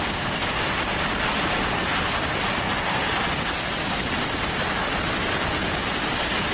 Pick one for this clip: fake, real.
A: real